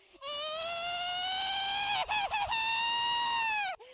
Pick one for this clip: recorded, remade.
recorded